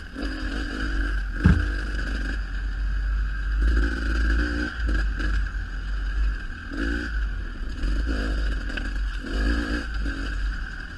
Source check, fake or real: real